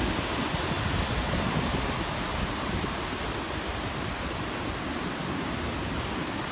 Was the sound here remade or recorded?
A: recorded